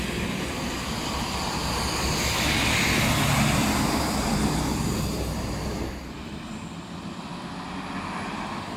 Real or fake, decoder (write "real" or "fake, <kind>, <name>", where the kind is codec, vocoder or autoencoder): real